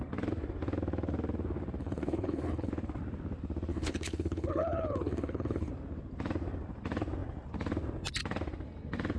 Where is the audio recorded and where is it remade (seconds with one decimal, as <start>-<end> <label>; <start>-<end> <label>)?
0.0-1.8 recorded; 1.8-2.7 remade; 2.7-3.7 recorded; 3.7-5.7 remade; 5.7-9.2 recorded